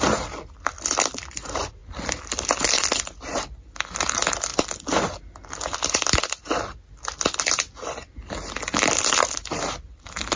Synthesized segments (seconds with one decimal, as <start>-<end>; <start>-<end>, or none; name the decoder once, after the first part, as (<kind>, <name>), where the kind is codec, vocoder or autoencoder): 1.8-3.3 (vocoder, BigVGAN v2); 4.5-6.6; 8.7-9.4